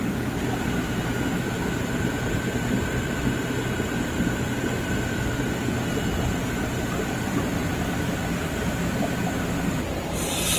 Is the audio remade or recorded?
recorded